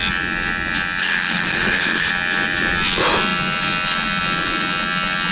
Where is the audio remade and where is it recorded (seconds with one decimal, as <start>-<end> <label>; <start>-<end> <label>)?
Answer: 0.0-1.0 recorded; 1.0-2.1 remade; 2.1-5.3 recorded